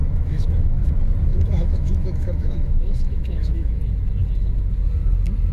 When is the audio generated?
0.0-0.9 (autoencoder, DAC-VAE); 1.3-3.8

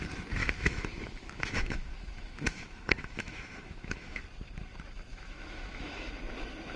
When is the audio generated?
0.4-4.2 (autoencoder, DAC-VAE); 5.1-6.1